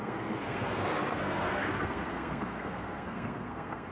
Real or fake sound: fake